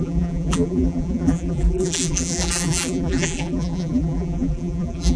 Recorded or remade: remade